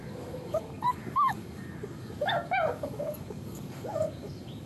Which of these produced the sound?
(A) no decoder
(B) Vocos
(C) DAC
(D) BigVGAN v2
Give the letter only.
C